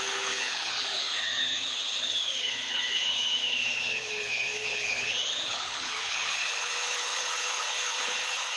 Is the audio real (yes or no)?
no